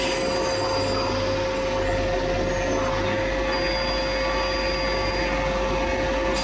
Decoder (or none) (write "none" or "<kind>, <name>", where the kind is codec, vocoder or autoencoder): none